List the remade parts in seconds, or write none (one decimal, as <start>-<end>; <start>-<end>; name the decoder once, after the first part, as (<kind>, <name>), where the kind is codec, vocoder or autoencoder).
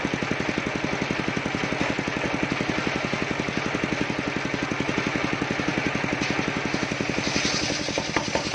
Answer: none